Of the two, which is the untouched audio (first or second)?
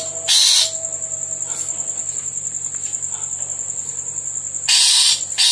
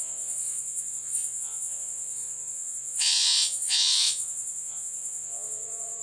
first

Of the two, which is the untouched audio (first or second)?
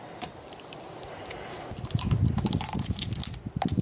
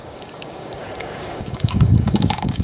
first